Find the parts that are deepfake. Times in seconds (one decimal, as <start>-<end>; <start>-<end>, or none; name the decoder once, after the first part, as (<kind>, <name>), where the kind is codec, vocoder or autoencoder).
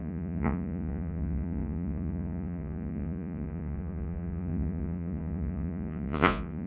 0.0-6.7 (vocoder, Vocos)